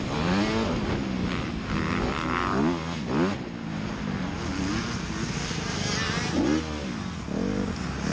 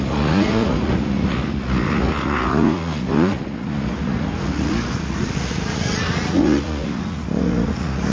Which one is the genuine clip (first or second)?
first